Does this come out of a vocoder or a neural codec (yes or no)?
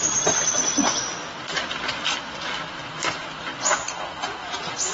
no